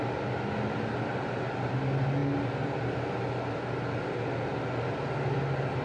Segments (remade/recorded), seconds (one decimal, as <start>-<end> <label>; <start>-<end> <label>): 0.0-5.8 recorded